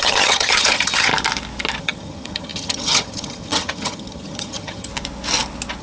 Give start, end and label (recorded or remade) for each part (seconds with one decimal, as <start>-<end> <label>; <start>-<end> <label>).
0.0-1.1 remade; 1.1-1.8 recorded; 1.8-4.9 remade; 4.9-5.8 recorded